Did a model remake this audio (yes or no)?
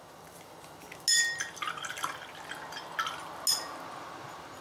no